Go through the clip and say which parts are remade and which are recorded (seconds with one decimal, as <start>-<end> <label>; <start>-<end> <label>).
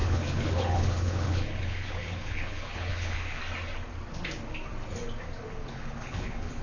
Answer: 0.0-3.4 remade; 3.4-5.5 recorded; 5.5-6.6 remade